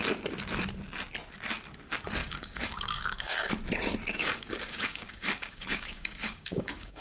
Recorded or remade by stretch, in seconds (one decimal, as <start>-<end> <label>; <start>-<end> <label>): 0.0-2.2 recorded; 2.2-3.5 remade; 3.5-4.1 recorded; 4.1-7.0 remade

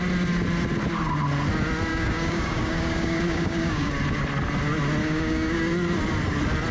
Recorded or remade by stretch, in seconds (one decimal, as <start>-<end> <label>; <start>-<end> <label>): 0.0-1.9 recorded; 1.9-3.9 remade; 3.9-5.0 recorded; 5.0-5.7 remade; 5.7-6.7 recorded

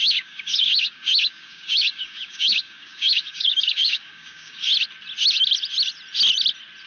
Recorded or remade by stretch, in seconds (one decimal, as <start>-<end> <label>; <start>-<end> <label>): 0.0-4.7 remade; 4.7-6.9 recorded

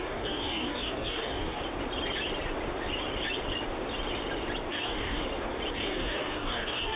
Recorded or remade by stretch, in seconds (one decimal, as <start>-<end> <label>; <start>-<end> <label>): 0.0-1.6 remade; 1.6-4.7 recorded; 4.7-5.2 remade; 5.2-5.7 recorded; 5.7-7.0 remade

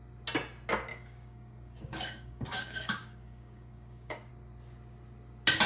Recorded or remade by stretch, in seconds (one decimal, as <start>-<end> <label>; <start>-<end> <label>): 0.0-0.9 recorded; 0.9-4.3 remade; 4.3-5.7 recorded